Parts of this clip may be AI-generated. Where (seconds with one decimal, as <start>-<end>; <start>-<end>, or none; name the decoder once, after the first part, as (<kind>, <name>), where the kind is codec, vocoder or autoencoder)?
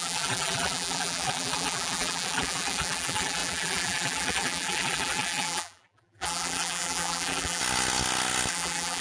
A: 0.0-7.6 (vocoder, BigVGAN v2); 8.5-9.0